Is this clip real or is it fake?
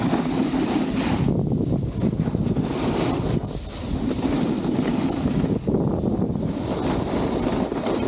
real